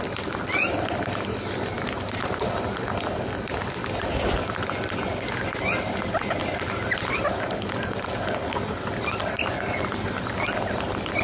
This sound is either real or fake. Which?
real